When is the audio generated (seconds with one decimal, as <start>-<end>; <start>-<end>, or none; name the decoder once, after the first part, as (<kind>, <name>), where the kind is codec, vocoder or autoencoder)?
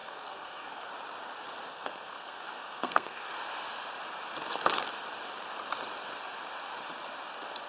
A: 0.0-0.9 (codec, SNAC); 1.7-3.3